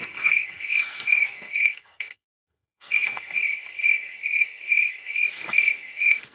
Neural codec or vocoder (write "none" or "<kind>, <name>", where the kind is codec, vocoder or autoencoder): codec, SNAC